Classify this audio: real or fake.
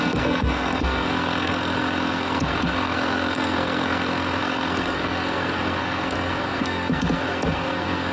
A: fake